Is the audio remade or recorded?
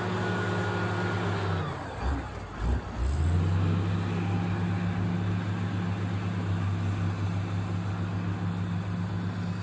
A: recorded